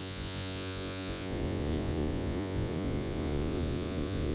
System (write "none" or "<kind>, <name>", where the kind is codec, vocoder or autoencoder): vocoder, Vocos